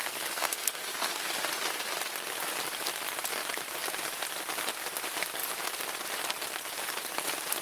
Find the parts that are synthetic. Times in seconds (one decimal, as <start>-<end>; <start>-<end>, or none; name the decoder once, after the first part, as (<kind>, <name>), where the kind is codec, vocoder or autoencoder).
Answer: 0.0-1.3 (codec, SNAC)